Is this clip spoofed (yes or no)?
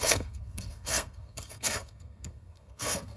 yes